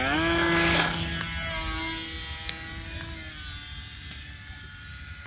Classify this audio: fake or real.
real